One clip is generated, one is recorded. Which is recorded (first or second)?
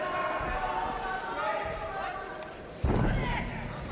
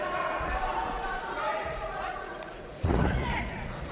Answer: first